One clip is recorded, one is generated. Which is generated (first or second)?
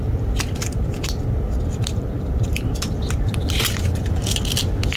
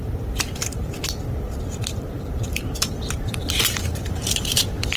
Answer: second